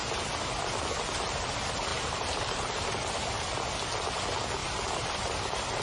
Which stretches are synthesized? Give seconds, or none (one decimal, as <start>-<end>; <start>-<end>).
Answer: 1.9-3.3; 4.6-5.8